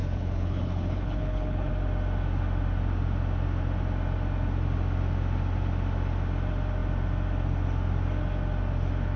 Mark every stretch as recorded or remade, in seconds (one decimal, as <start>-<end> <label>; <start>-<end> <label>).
0.0-1.7 remade; 1.7-9.2 recorded